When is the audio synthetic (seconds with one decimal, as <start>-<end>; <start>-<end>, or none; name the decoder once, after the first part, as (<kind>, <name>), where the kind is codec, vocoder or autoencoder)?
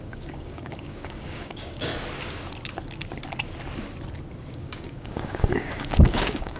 0.0-1.9 (codec, DAC); 4.5-6.6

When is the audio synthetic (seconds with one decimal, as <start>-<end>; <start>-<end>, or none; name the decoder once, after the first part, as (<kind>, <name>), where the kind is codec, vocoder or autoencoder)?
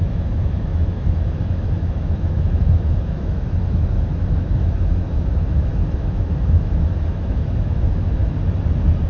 0.0-8.2 (autoencoder, DAC-VAE)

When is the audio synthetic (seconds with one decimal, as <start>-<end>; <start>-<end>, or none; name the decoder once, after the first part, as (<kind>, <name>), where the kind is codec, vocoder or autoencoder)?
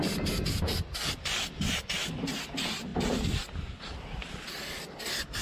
none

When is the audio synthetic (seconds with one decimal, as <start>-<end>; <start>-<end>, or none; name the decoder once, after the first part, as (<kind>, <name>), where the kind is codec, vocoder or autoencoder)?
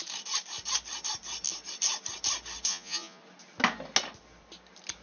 2.7-3.2 (vocoder, Vocos)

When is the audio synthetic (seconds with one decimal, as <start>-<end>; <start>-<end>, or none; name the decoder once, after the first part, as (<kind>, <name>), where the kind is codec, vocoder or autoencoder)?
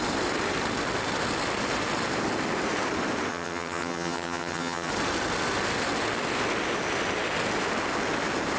3.3-4.9 (vocoder, HiFi-GAN)